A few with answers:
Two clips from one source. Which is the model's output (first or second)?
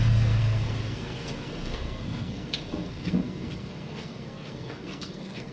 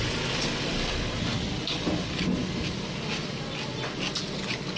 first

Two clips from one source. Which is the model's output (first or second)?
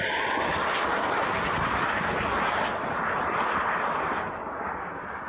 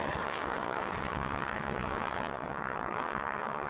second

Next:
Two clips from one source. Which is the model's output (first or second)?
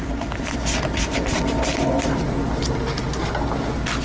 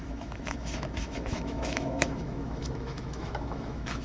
second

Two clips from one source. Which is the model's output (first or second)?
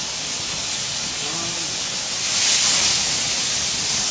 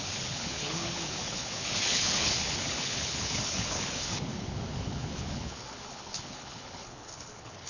second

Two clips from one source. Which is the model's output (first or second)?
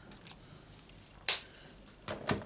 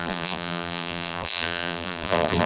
second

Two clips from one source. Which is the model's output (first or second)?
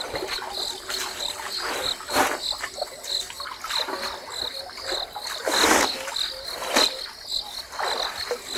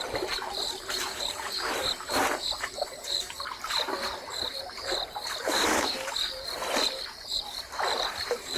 second